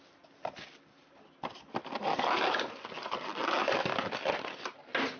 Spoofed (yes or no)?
no